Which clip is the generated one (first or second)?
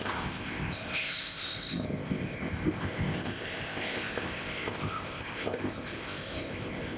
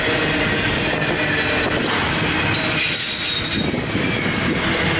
first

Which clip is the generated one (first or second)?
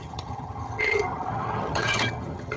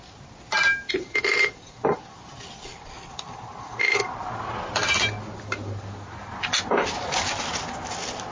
first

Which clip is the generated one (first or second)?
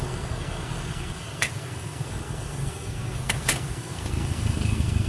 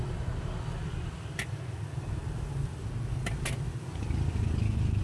first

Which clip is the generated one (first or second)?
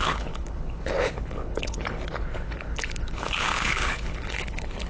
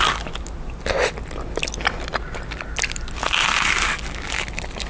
first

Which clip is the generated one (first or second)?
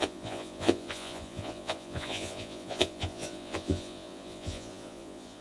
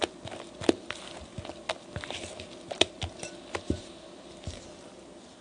first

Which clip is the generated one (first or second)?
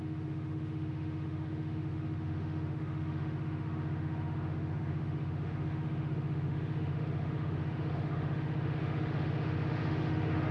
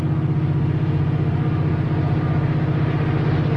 first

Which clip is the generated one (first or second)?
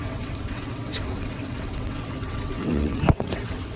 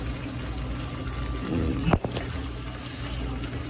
first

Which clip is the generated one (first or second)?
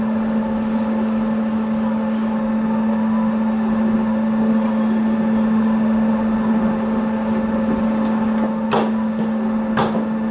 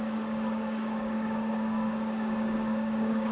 second